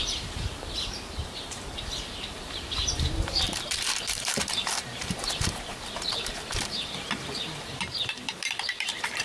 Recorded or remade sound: remade